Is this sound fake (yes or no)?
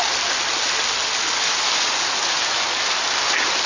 no